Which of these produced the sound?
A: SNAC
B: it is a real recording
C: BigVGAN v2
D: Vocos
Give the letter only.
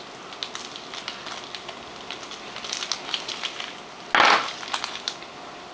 B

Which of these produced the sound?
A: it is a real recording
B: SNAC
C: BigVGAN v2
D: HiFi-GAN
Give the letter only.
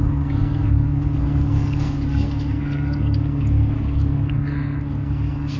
B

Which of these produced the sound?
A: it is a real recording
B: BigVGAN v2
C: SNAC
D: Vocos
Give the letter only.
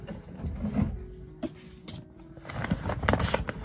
A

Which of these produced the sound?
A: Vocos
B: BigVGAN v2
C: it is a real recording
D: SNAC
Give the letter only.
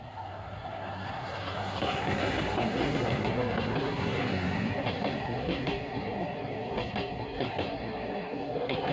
D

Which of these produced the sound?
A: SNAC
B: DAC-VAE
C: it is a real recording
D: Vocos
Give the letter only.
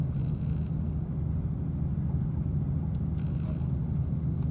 C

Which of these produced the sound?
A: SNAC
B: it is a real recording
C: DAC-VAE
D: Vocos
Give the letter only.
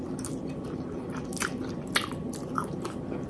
B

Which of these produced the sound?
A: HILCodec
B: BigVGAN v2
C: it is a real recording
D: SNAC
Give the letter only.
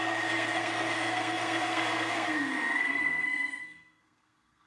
D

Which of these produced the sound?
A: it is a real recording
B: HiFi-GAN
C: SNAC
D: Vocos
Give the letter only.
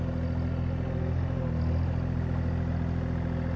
A